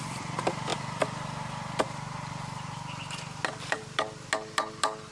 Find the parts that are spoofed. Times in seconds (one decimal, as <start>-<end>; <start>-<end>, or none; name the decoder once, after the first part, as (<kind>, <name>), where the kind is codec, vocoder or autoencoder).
none